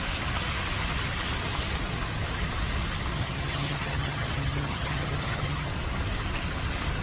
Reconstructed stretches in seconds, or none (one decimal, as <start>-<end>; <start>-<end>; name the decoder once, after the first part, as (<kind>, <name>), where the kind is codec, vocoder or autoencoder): 3.1-5.7 (vocoder, HiFi-GAN)